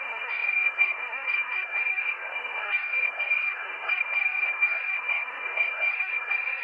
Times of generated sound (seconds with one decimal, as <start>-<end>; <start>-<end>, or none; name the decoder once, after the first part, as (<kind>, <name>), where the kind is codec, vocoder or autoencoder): 0.0-6.6 (codec, SNAC)